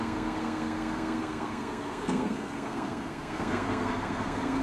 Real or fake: fake